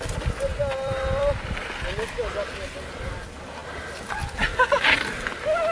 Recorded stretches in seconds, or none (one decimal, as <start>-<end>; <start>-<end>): 0.0-0.5; 1.7-5.7